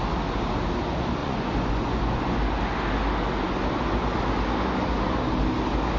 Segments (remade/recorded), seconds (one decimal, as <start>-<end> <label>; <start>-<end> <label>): 0.0-1.2 recorded; 1.2-2.4 remade; 2.4-6.0 recorded